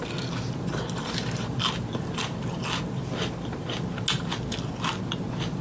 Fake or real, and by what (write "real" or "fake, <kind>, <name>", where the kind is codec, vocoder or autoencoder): real